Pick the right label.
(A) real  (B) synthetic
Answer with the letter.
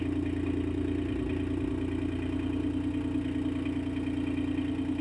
A